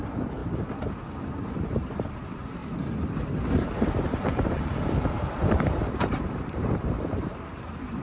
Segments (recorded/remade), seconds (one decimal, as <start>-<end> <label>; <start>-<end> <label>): 0.0-0.4 remade; 0.4-1.5 recorded; 1.5-2.6 remade; 2.6-3.9 recorded; 3.9-8.0 remade